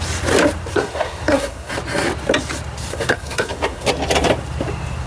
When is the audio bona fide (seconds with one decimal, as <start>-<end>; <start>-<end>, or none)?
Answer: 0.0-0.7; 1.7-2.9; 3.9-5.1